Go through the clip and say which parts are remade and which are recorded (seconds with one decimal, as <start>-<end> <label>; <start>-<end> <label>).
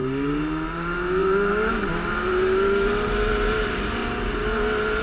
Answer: 0.0-0.7 recorded; 0.7-4.0 remade; 4.0-5.0 recorded